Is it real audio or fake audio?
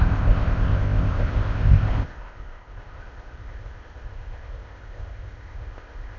fake